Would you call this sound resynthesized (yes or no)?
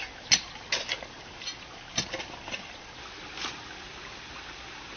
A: no